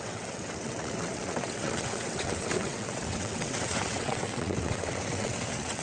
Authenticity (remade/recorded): remade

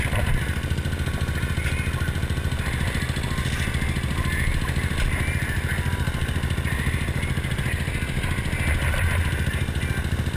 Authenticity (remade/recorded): recorded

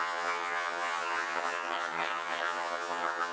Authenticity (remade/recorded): remade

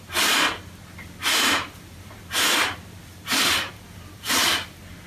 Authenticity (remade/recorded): recorded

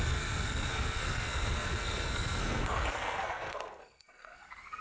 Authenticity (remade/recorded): remade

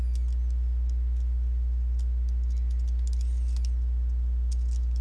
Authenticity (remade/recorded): recorded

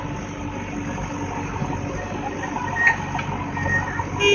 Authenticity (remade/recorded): recorded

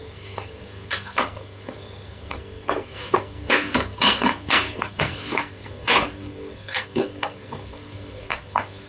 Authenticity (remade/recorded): remade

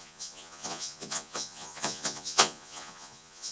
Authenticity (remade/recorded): remade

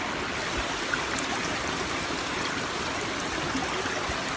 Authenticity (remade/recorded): recorded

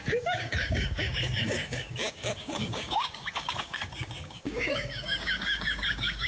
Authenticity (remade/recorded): remade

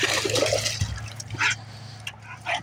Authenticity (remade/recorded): recorded